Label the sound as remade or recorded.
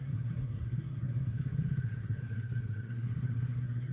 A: remade